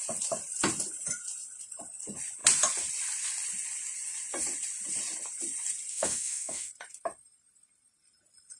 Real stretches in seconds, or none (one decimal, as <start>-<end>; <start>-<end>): 0.0-5.9; 6.7-8.6

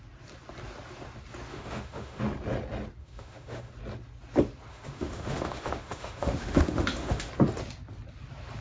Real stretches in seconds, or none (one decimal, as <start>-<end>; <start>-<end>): 0.0-1.5; 2.2-3.0; 3.7-4.7; 7.3-8.6